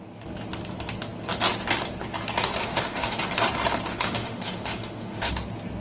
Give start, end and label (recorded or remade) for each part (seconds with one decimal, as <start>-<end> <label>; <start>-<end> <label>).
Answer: 0.0-2.6 recorded; 2.6-3.2 remade; 3.2-3.9 recorded; 3.9-5.3 remade; 5.3-5.8 recorded